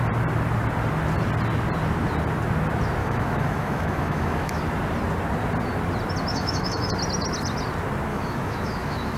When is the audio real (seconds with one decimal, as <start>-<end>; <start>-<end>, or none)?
0.0-3.0; 4.6-6.3; 6.9-8.1